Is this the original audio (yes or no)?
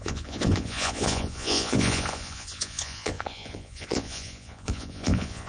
no